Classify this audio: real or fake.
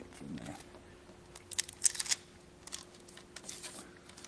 real